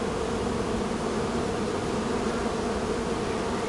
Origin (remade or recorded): recorded